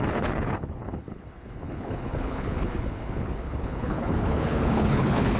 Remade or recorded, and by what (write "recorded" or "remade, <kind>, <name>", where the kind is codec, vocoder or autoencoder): remade, codec, HILCodec